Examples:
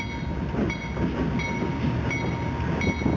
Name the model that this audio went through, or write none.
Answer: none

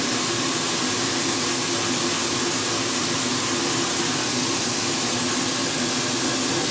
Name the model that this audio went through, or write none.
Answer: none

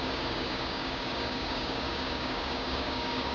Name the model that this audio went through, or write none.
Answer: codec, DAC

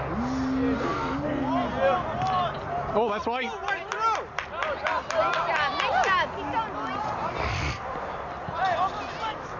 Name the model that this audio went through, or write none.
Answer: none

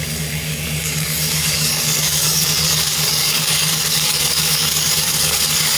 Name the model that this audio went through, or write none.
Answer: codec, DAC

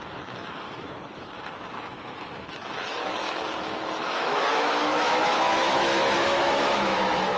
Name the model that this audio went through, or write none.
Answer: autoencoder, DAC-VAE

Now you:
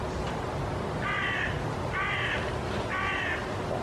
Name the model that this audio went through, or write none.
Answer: none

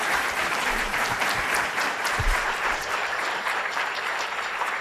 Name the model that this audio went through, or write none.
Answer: vocoder, BigVGAN v2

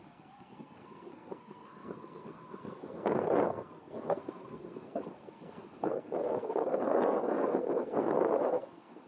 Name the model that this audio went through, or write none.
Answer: codec, SNAC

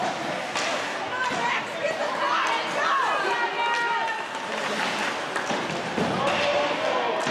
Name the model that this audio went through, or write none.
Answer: none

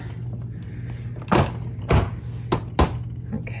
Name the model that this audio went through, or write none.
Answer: none